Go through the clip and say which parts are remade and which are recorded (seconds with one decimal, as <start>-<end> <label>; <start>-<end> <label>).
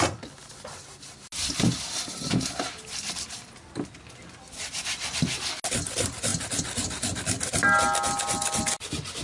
0.0-9.2 recorded